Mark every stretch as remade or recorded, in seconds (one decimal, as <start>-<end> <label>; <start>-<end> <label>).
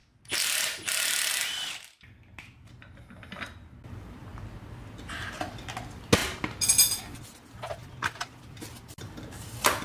0.0-9.8 recorded